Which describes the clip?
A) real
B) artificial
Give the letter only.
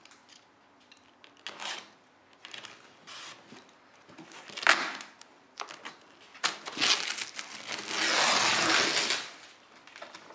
A